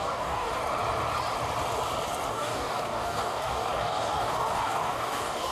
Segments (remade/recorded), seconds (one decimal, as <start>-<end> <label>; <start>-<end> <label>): 0.0-0.6 remade; 0.6-2.3 recorded; 2.3-5.5 remade